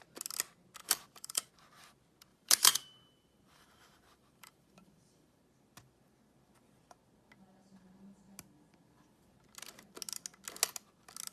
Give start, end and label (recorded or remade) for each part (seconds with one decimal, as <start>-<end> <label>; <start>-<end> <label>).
0.0-0.8 recorded; 0.8-1.5 remade; 1.5-2.3 recorded; 2.3-5.4 remade; 5.4-11.3 recorded